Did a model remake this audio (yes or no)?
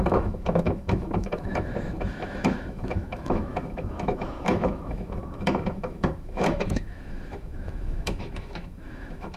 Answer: yes